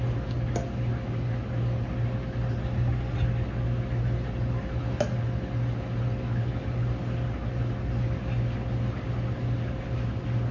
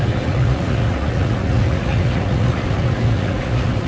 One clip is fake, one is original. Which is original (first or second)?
first